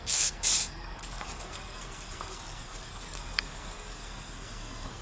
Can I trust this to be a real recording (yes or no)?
no